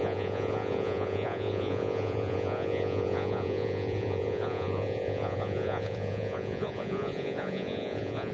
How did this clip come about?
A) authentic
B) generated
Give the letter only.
B